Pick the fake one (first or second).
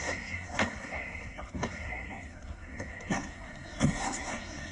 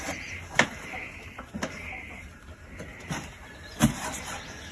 first